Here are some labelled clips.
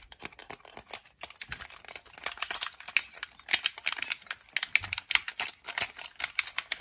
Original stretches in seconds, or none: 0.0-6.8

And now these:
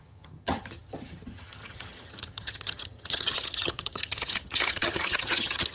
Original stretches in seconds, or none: none

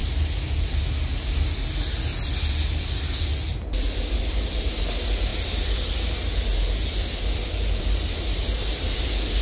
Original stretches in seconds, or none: 0.0-9.4

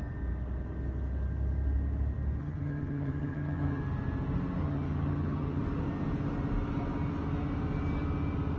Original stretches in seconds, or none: 0.0-2.4; 3.8-4.6; 5.6-8.6

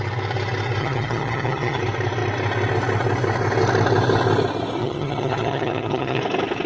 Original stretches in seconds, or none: 0.0-0.8; 1.8-4.8; 6.2-6.7

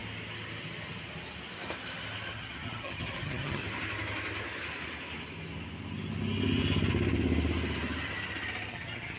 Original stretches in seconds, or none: 0.0-2.3; 3.6-8.7

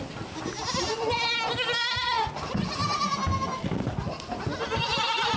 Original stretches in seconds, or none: 0.0-5.4